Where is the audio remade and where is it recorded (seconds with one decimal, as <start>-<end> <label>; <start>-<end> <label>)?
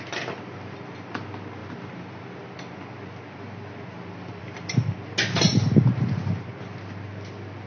0.0-7.7 recorded